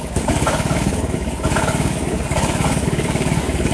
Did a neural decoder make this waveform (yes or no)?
yes